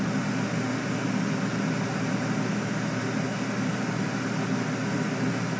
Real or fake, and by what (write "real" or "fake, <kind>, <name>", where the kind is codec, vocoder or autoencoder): real